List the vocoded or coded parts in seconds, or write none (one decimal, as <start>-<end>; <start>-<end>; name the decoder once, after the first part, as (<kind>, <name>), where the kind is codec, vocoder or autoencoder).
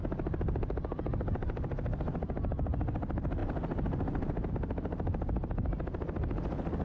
none